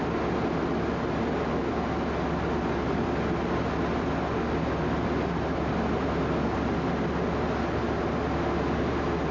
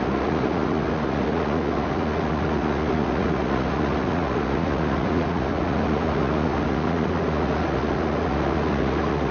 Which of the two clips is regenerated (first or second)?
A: second